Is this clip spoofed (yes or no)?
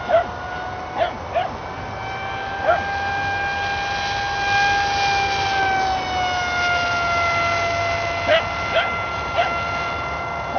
no